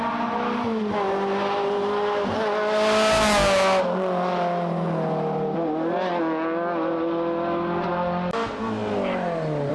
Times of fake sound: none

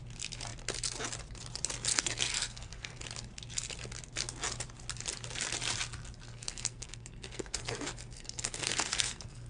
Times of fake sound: 1.9-3.0; 6.3-9.5

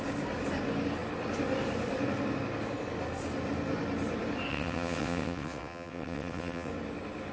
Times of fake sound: 4.5-6.7

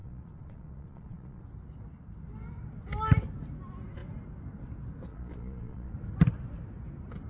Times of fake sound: 0.0-1.4; 5.1-5.9

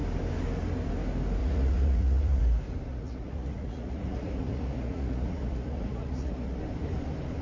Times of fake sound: 1.4-2.4; 2.9-6.6

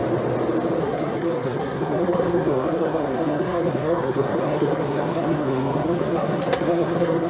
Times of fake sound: 0.8-7.3